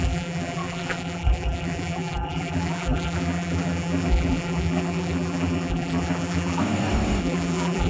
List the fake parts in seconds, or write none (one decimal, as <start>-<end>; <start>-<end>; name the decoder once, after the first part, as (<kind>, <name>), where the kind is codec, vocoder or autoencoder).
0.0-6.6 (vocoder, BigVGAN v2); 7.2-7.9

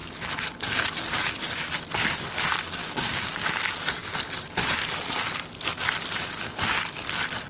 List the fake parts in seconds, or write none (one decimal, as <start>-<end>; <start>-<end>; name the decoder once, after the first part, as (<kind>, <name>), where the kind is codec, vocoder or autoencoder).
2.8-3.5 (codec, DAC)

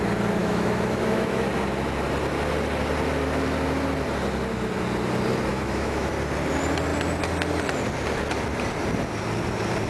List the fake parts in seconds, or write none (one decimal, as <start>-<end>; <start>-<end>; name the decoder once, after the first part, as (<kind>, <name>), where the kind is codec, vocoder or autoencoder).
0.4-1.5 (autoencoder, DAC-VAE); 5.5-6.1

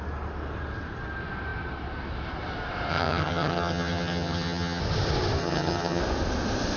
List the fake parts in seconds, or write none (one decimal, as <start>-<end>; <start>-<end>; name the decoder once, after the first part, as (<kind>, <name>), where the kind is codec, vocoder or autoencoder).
2.9-4.8 (vocoder, HiFi-GAN); 5.4-6.0

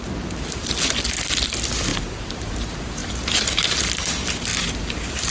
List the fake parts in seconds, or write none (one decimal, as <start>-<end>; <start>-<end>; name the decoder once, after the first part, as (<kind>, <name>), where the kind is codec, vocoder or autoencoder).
none

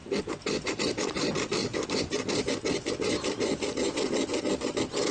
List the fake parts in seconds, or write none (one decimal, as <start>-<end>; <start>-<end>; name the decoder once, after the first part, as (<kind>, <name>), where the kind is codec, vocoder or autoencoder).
0.7-1.6 (vocoder, BigVGAN v2)